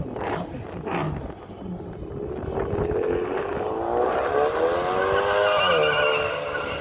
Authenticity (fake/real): real